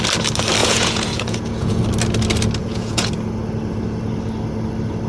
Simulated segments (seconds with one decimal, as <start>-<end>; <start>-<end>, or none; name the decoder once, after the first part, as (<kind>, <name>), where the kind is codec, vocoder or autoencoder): 0.6-1.8 (vocoder, Vocos); 2.6-3.1